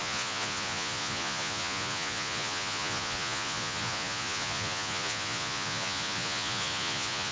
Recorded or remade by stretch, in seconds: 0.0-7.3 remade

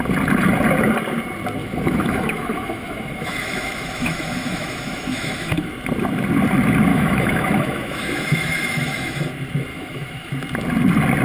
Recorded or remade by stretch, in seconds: 0.0-1.6 recorded; 1.6-5.7 remade; 5.7-6.9 recorded; 6.9-9.2 remade; 9.2-9.7 recorded; 9.7-10.3 remade; 10.3-11.2 recorded

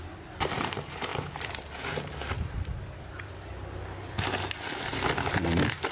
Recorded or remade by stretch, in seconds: 0.0-5.9 recorded

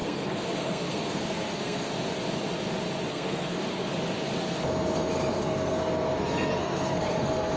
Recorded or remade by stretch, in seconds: 0.0-1.9 remade; 1.9-3.1 recorded; 3.1-3.9 remade; 3.9-5.3 recorded; 5.3-7.6 remade

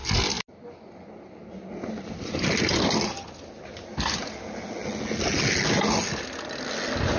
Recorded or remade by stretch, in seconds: 0.0-7.2 recorded

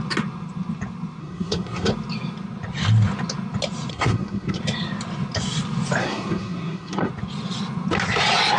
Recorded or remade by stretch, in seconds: 0.0-1.2 recorded; 1.2-1.9 remade; 1.9-3.9 recorded; 3.9-4.6 remade; 4.6-6.0 recorded; 6.0-7.1 remade; 7.1-8.6 recorded